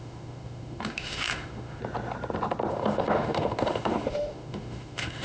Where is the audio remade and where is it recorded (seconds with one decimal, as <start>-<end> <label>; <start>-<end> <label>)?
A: 0.0-1.8 remade; 1.8-2.7 recorded; 2.7-5.2 remade